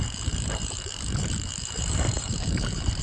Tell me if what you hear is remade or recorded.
remade